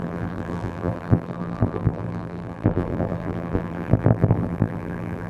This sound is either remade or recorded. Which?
remade